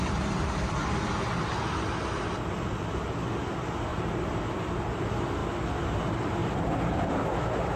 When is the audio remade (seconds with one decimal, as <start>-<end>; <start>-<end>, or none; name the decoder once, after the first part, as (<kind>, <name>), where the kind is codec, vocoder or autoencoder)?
3.9-4.9 (vocoder, BigVGAN v2); 6.4-7.1